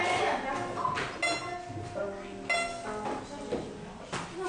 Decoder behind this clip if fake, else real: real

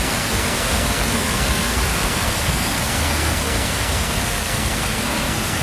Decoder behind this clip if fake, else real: fake, codec, SNAC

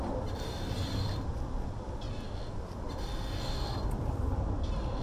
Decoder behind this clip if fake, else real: real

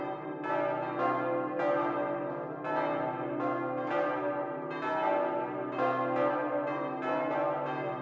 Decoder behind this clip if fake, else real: real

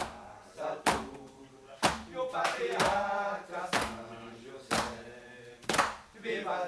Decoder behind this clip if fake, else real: real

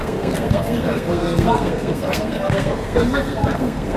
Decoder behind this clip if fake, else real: fake, codec, SNAC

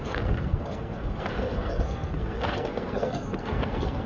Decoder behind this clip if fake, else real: fake, codec, SNAC